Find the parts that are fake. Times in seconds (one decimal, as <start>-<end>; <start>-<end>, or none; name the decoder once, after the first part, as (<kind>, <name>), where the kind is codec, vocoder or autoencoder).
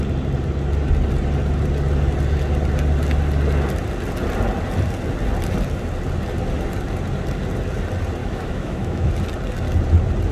8.2-9.1 (autoencoder, DAC-VAE)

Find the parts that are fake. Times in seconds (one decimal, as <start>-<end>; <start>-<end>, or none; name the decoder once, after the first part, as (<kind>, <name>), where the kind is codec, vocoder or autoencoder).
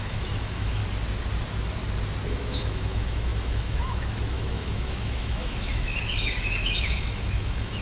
0.0-0.8 (autoencoder, DAC-VAE); 2.3-7.8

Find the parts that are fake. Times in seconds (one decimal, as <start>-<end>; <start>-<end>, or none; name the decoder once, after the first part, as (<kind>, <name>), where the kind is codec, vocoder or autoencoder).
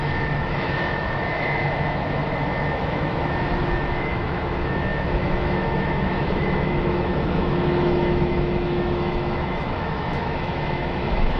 0.0-11.4 (autoencoder, DAC-VAE)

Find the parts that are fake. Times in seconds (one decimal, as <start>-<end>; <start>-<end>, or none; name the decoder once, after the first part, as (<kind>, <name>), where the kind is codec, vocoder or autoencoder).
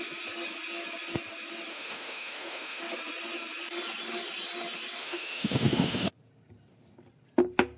1.7-2.8 (autoencoder, DAC-VAE); 5.0-6.1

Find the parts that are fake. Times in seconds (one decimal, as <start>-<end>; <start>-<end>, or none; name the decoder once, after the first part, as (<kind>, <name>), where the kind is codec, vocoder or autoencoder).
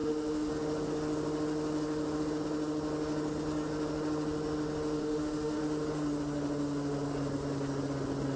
0.0-0.5 (autoencoder, DAC-VAE); 5.0-5.6